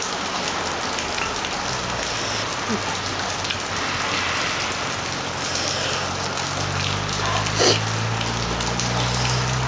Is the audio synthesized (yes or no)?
no